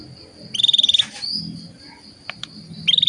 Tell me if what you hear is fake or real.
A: real